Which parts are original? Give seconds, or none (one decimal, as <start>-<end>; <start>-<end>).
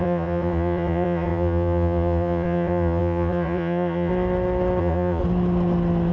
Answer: 4.1-4.8; 5.2-6.1